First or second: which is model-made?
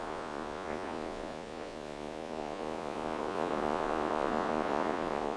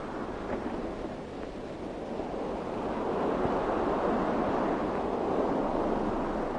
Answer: first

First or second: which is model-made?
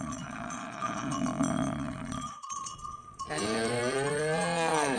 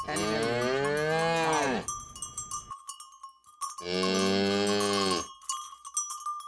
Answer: first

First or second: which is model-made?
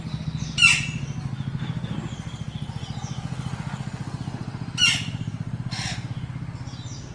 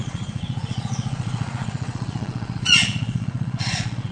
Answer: second